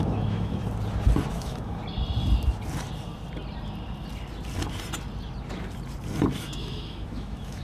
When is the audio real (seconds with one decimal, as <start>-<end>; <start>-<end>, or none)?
0.6-1.3; 1.8-6.4